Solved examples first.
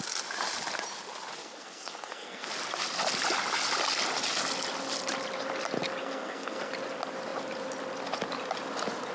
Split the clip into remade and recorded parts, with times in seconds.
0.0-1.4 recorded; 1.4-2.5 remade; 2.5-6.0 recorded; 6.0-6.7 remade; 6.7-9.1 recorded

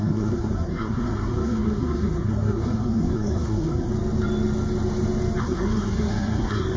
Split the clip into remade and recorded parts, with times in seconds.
0.0-3.9 remade; 3.9-5.4 recorded; 5.4-6.8 remade

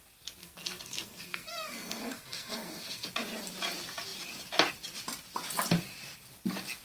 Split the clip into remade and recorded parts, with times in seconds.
0.0-0.4 recorded; 0.4-3.1 remade; 3.1-6.8 recorded

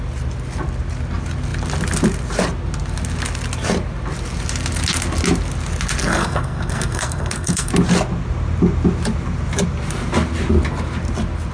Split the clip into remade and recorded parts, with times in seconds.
0.0-6.0 recorded; 6.0-7.7 remade; 7.7-11.5 recorded

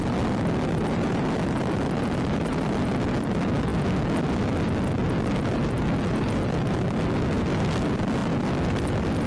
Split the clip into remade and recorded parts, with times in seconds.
0.0-9.3 recorded

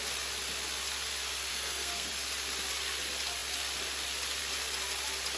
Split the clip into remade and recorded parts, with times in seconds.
0.0-1.5 recorded; 1.5-2.1 remade; 2.1-5.4 recorded

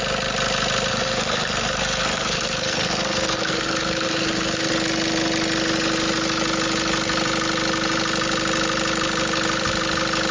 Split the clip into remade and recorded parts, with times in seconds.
0.0-0.9 recorded; 0.9-4.7 remade; 4.7-10.3 recorded